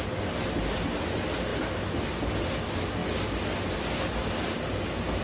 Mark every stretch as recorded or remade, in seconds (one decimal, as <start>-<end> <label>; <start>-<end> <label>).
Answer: 0.0-5.2 recorded